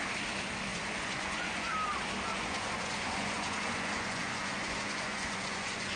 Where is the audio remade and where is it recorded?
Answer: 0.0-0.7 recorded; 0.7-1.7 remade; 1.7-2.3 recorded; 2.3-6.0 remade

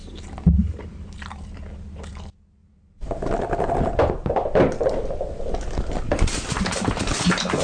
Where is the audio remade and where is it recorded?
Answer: 0.0-1.6 remade; 1.6-2.6 recorded; 2.6-3.7 remade; 3.7-7.6 recorded

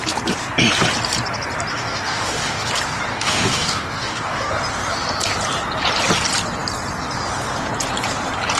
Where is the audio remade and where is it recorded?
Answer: 0.0-1.7 recorded; 1.7-2.7 remade; 2.7-3.1 recorded; 3.1-4.5 remade; 4.5-8.6 recorded

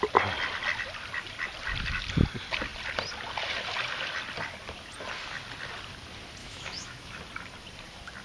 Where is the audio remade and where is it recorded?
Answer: 0.0-6.4 recorded; 6.4-7.2 remade; 7.2-8.2 recorded

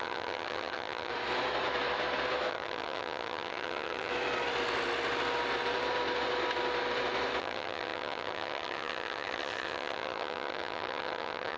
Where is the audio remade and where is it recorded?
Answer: 0.0-1.1 remade; 1.1-2.5 recorded; 2.5-4.1 remade; 4.1-7.4 recorded; 7.4-11.6 remade

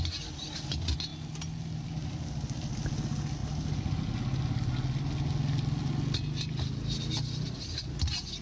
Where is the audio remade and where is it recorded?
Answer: 0.0-8.4 recorded